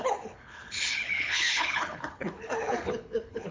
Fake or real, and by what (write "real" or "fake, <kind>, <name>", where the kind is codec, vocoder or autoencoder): fake, codec, HILCodec